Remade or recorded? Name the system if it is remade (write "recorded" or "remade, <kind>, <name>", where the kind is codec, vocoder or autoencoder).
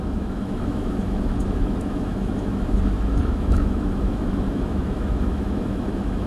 remade, autoencoder, DAC-VAE